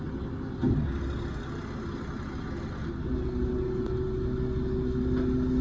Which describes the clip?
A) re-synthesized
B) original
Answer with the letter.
B